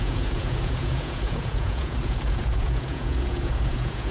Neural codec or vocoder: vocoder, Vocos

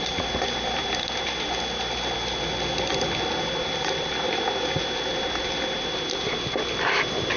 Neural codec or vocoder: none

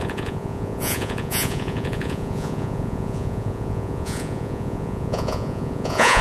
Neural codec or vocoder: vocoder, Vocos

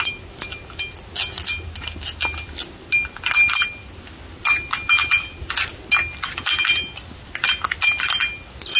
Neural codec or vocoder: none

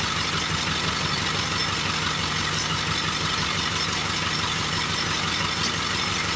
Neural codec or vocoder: none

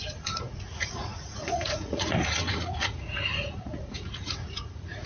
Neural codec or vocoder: vocoder, Vocos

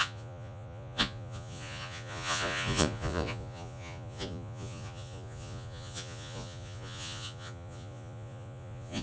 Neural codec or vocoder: vocoder, Vocos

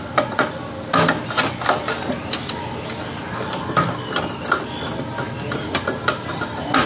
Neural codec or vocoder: none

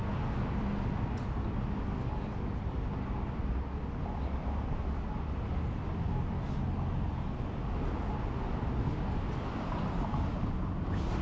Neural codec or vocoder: none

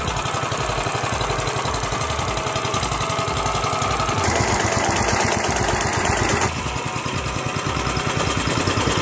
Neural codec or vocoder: none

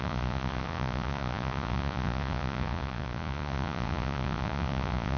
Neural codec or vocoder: vocoder, Vocos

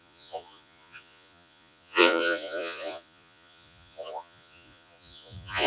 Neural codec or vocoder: vocoder, Vocos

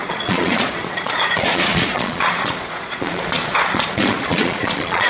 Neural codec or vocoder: vocoder, Vocos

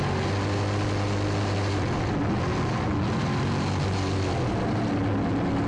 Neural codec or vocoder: none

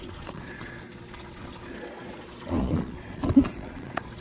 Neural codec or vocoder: vocoder, Vocos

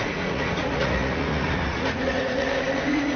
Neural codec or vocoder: vocoder, Vocos